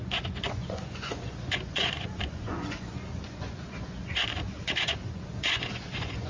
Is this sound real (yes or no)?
no